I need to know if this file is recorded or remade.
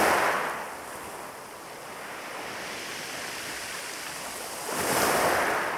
recorded